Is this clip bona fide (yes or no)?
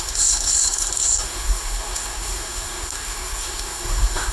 no